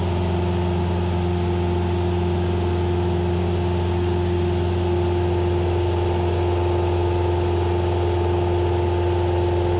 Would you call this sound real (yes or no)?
yes